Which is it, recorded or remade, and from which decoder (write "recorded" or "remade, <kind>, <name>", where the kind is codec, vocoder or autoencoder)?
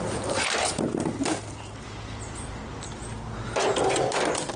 recorded